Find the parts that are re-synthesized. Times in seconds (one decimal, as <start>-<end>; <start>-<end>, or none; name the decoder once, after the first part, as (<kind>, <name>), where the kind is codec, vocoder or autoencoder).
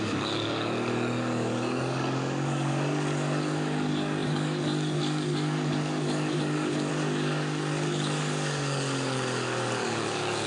0.0-10.5 (codec, DAC)